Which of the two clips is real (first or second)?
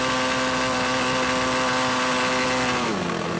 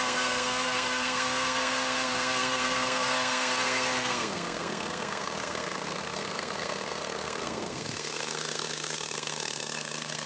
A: first